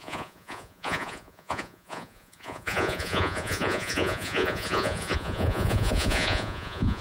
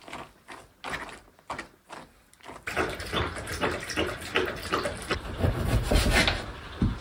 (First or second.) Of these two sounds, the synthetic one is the first